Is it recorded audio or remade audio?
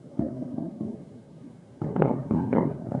remade